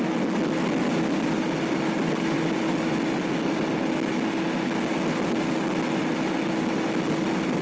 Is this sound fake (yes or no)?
no